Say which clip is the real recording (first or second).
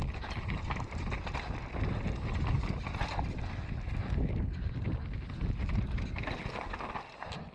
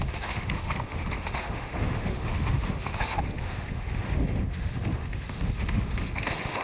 first